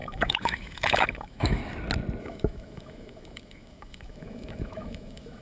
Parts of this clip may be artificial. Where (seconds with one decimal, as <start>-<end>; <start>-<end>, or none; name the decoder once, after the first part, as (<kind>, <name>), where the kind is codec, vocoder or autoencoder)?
0.0-1.6 (autoencoder, DAC-VAE); 2.2-5.4